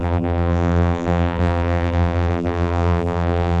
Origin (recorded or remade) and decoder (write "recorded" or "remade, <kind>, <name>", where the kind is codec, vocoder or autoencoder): remade, vocoder, BigVGAN v2